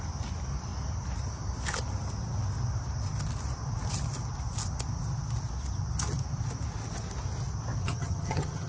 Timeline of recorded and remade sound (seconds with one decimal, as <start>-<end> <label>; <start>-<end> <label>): 0.0-7.8 recorded; 7.8-8.7 remade